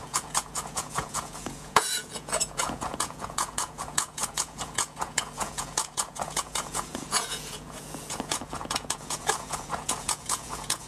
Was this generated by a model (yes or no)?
yes